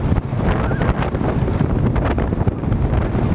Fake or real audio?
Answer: real